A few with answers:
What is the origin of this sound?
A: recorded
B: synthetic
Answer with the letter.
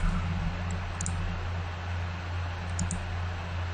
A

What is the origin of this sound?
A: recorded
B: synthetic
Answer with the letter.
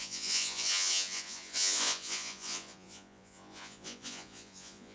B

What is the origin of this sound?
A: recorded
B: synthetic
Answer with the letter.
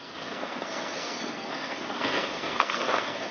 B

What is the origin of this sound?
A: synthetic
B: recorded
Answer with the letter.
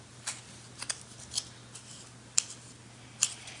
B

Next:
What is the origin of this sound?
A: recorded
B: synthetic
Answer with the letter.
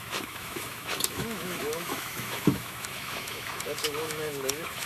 B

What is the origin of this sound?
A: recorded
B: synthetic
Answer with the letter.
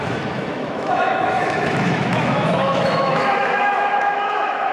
B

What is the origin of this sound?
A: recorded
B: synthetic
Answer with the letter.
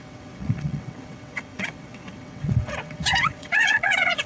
B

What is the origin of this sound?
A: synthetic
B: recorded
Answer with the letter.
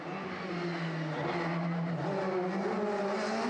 B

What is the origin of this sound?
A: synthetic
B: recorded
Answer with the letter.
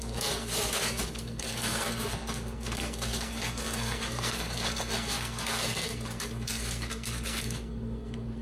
A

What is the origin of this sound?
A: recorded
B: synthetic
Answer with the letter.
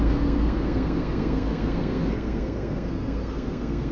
B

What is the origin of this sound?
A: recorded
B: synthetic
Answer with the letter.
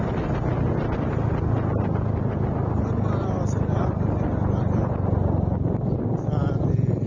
A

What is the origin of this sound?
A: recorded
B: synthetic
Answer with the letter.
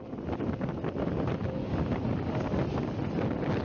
A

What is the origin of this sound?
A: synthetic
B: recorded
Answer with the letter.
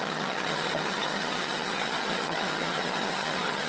A